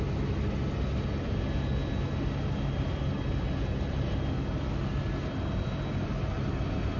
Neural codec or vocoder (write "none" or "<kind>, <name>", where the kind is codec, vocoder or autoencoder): none